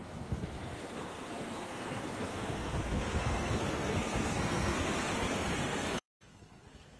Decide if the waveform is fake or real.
fake